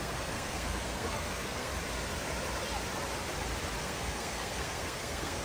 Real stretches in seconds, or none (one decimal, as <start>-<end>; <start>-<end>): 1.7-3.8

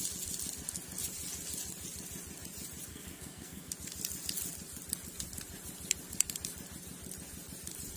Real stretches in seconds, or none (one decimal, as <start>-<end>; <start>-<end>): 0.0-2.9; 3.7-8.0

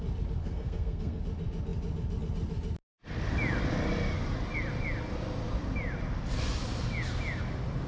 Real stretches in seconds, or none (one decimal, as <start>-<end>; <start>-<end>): 0.0-0.4; 1.2-7.9

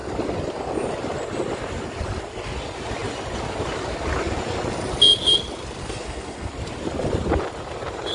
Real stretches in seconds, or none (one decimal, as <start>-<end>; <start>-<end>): 0.0-5.8; 6.5-8.1

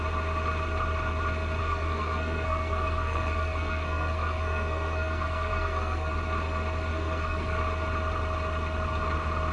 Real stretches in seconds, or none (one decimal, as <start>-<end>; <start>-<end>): 0.0-1.6; 6.1-6.9; 7.6-9.5

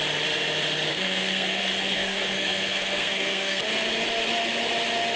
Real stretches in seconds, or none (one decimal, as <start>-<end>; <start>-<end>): 0.0-0.9; 3.6-5.2

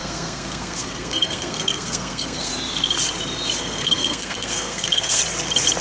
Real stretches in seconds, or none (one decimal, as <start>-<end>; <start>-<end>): 2.5-3.6; 5.2-5.8

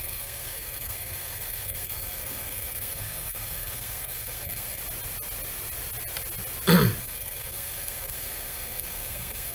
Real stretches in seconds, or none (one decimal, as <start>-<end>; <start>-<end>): 4.8-7.0